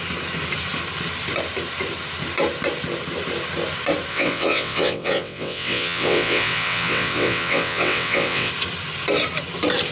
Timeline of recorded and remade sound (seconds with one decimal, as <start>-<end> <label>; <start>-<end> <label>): 0.0-4.1 recorded; 4.1-8.5 remade; 8.5-9.9 recorded